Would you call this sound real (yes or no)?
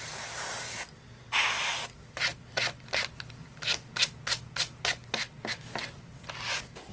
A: yes